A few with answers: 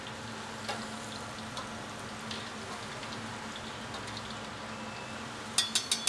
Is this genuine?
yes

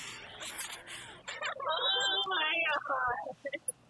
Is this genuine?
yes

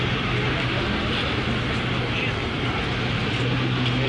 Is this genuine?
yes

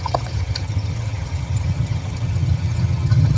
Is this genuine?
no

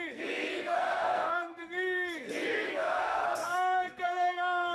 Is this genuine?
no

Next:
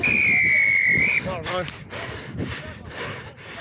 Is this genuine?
yes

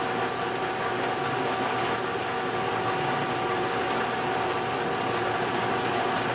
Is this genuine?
yes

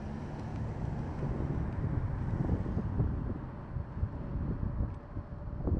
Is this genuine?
yes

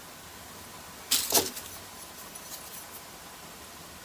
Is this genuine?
yes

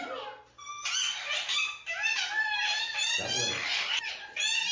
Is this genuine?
yes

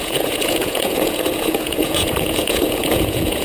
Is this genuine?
no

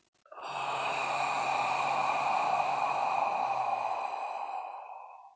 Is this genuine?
yes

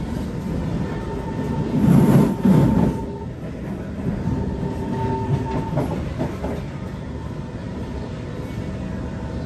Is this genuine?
yes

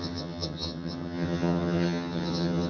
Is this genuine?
no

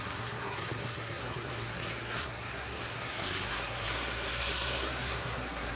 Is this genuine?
no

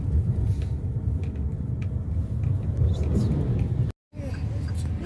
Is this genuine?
yes